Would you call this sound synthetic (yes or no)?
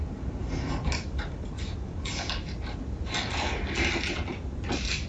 no